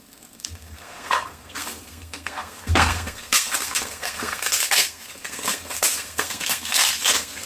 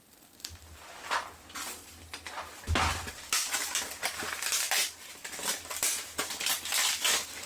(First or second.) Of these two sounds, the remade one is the first